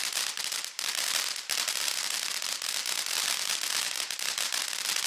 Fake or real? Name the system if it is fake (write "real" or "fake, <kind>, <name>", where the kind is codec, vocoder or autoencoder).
fake, vocoder, BigVGAN v2